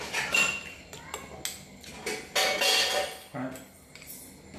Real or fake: real